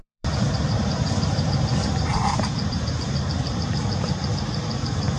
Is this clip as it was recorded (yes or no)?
no